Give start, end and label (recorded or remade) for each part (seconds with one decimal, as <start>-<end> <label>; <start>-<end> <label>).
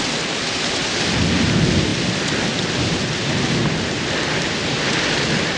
0.0-5.6 recorded